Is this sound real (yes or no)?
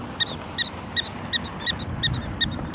yes